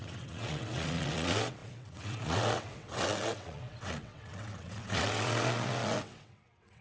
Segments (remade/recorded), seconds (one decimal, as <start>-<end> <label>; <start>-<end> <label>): 0.0-6.8 remade

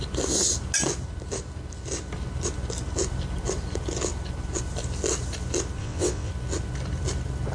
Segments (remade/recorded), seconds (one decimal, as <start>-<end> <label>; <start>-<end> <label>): 0.0-5.8 recorded; 5.8-6.3 remade; 6.3-7.5 recorded

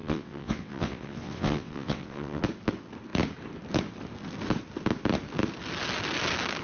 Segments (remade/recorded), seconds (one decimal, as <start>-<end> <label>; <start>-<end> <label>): 0.0-2.4 remade; 2.4-6.6 recorded